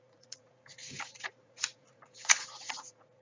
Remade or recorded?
remade